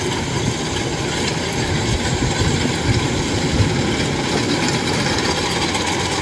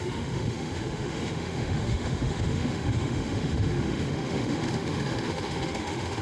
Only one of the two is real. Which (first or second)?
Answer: first